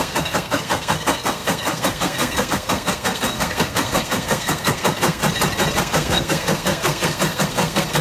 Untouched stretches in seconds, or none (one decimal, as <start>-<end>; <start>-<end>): 5.2-5.8